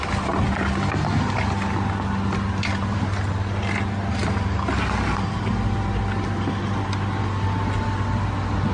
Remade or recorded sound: recorded